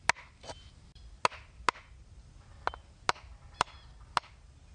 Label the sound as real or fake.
real